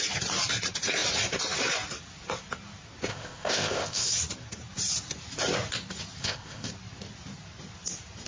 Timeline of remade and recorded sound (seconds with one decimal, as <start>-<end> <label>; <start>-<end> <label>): 0.0-3.1 recorded; 3.1-4.1 remade; 4.1-6.2 recorded; 6.2-6.7 remade; 6.7-8.3 recorded